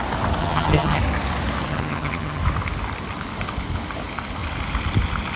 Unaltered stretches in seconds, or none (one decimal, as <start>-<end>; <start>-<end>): 0.0-0.4; 1.0-1.7; 2.4-5.4